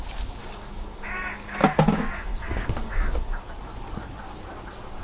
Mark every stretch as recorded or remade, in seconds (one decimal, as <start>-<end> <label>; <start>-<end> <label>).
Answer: 0.0-0.4 recorded; 0.4-3.4 remade; 3.4-5.0 recorded